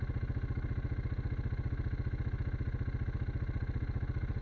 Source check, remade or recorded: recorded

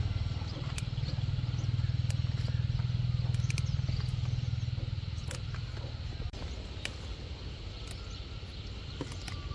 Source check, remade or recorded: recorded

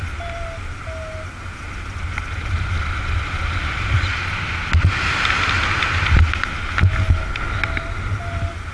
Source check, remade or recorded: recorded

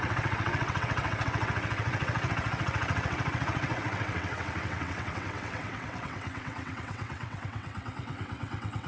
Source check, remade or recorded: remade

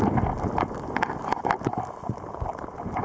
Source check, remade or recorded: recorded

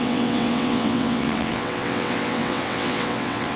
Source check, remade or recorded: remade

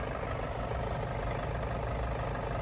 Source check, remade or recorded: recorded